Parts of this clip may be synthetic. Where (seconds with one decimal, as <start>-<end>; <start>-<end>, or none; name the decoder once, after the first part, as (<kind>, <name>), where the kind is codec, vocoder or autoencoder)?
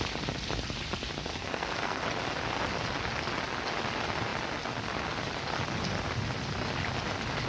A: 1.3-2.0 (codec, SNAC)